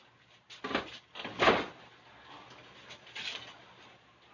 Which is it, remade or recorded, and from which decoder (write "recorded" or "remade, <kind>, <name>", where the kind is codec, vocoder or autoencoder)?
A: recorded